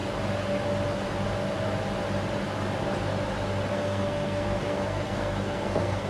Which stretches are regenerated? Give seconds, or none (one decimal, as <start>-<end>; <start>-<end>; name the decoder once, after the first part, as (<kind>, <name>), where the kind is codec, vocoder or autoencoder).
3.7-6.1 (codec, SNAC)